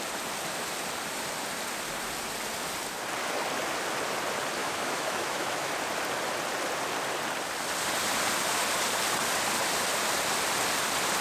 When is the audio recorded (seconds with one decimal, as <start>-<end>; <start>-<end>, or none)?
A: 0.0-4.6; 5.7-11.2

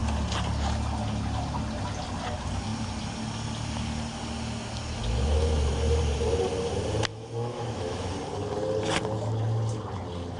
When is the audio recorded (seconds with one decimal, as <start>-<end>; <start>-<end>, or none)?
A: 0.0-7.1; 8.1-10.4